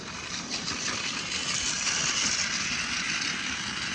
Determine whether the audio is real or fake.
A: real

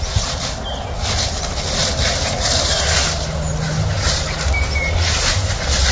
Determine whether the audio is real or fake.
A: real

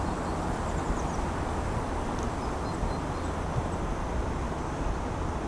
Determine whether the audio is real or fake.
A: real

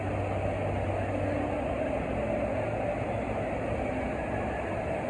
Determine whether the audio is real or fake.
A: real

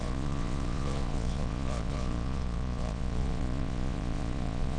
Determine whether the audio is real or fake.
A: fake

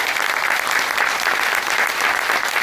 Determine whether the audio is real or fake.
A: real